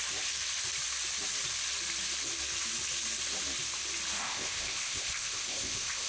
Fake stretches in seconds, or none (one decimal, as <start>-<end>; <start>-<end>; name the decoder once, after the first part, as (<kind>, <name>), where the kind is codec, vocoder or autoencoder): 4.2-6.1 (codec, ZipCodec)